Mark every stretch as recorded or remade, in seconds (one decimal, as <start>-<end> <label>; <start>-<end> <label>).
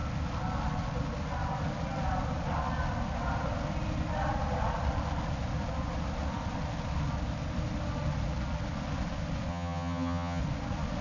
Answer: 0.0-9.5 recorded; 9.5-10.4 remade; 10.4-11.0 recorded